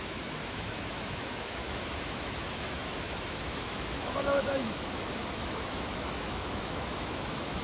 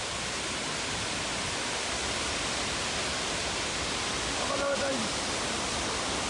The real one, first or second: second